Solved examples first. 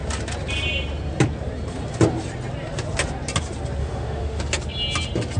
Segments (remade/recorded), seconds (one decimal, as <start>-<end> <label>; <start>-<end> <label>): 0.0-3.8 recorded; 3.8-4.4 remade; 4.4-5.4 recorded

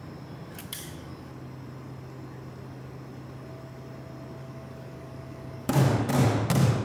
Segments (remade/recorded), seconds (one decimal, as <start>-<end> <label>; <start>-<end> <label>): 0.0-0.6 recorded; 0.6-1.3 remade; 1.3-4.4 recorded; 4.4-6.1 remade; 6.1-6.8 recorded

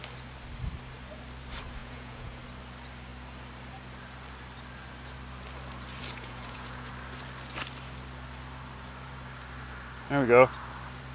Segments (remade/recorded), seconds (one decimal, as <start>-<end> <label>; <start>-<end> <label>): 0.0-1.8 recorded; 1.8-2.4 remade; 2.4-6.0 recorded; 6.0-6.9 remade; 6.9-11.1 recorded

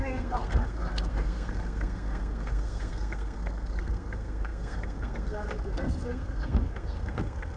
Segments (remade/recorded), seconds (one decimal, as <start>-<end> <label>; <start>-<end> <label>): 0.0-7.6 remade

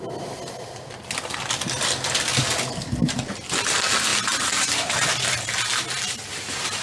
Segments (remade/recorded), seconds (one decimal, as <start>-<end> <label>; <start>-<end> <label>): 0.0-4.1 recorded; 4.1-5.1 remade; 5.1-6.8 recorded

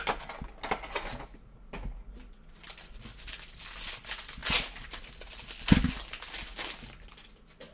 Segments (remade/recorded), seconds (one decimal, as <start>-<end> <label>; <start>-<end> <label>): 0.0-7.7 recorded

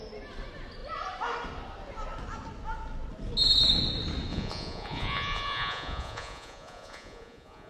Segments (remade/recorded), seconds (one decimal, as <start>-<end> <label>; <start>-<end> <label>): 0.0-4.3 recorded; 4.3-7.7 remade

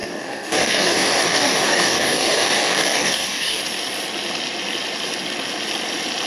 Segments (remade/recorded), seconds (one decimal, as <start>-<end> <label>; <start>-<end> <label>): 0.0-3.6 remade; 3.6-6.3 recorded